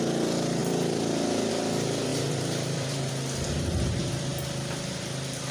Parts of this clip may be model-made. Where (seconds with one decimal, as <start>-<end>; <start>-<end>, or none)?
0.6-1.5; 2.1-3.1